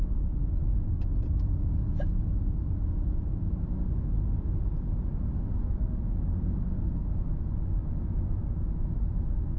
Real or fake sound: real